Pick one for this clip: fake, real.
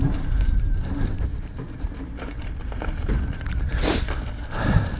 fake